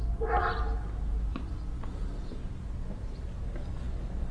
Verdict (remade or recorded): recorded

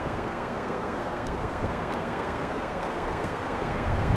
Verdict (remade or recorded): remade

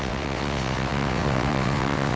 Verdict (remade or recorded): remade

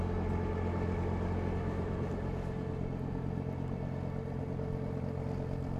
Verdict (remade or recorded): recorded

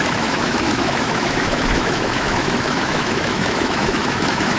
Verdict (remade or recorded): remade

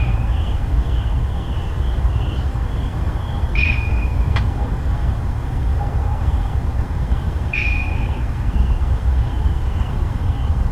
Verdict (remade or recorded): remade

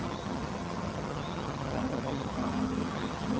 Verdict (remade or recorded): remade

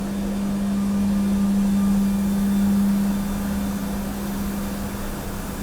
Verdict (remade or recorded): recorded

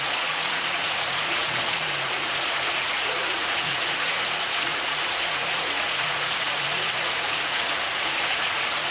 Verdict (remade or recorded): remade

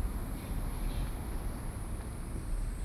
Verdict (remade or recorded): recorded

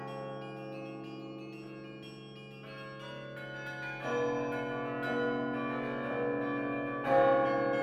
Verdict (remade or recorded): recorded